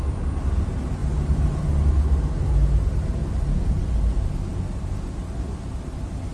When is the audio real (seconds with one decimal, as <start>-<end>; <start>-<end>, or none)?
0.0-1.0; 1.9-6.3